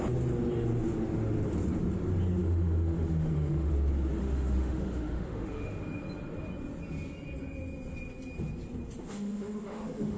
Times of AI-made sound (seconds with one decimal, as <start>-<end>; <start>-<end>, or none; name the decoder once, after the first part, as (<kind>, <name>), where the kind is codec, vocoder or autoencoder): 2.4-3.7 (autoencoder, DAC-VAE); 4.2-5.8; 9.0-10.2